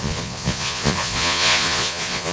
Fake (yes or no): yes